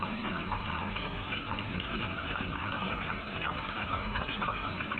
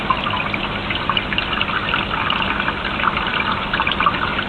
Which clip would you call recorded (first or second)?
second